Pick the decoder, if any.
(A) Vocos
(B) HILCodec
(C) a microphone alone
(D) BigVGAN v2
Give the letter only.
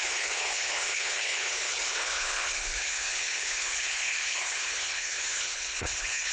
B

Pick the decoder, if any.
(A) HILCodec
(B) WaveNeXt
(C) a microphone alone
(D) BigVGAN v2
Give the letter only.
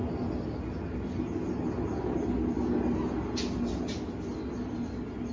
C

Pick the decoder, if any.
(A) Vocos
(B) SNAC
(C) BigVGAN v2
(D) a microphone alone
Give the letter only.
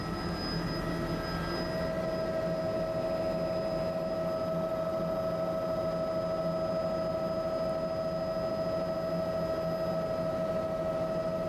D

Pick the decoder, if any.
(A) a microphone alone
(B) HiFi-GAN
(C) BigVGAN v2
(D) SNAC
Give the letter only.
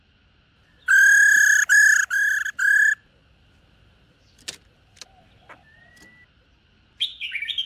A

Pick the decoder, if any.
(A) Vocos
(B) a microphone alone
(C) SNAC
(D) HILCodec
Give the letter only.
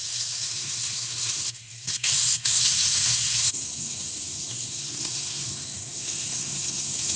C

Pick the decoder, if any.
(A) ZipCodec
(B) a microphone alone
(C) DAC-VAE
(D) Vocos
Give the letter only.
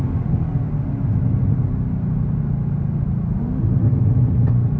B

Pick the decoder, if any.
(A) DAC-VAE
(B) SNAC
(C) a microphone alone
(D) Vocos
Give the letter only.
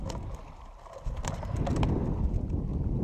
C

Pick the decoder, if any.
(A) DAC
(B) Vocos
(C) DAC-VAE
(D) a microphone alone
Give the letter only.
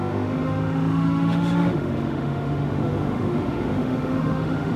C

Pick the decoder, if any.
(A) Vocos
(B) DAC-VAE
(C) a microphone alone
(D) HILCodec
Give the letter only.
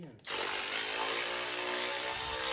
C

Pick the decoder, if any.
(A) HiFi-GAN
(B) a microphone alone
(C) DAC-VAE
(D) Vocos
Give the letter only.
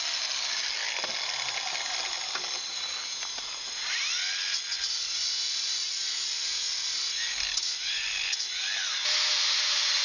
B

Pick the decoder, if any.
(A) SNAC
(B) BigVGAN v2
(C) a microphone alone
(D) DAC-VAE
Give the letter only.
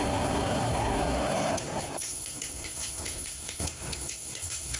A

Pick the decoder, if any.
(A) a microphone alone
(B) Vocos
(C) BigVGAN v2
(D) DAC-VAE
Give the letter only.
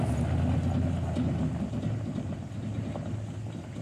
A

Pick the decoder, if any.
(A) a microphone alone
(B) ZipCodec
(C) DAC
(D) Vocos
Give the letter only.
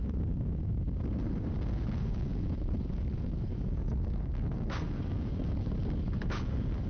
C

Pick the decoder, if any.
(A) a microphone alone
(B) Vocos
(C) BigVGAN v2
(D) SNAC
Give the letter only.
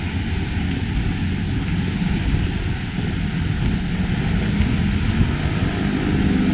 A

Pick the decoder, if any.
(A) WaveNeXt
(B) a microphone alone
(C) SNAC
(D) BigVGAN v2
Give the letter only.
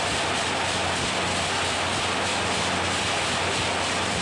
B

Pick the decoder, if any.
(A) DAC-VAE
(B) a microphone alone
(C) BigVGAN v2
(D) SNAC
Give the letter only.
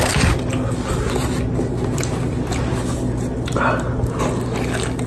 B